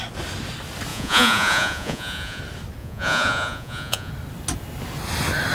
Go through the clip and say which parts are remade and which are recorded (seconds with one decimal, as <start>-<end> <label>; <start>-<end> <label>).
0.0-0.9 recorded; 0.9-2.4 remade; 2.4-2.8 recorded; 2.8-4.1 remade; 4.1-5.5 recorded